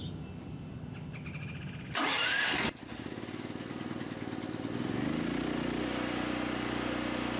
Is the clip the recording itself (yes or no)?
yes